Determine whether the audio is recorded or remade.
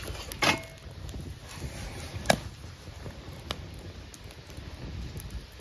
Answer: recorded